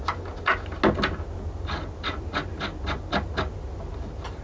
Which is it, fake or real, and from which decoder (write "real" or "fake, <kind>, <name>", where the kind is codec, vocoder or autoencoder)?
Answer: real